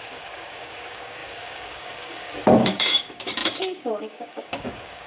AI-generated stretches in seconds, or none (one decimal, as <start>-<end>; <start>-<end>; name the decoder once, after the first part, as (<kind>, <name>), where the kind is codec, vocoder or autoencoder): 0.0-5.1 (codec, DAC)